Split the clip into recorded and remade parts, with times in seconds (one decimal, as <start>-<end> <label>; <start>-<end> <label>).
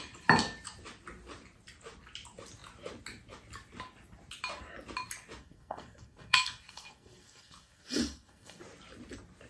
0.0-5.4 recorded; 5.4-8.6 remade; 8.6-9.5 recorded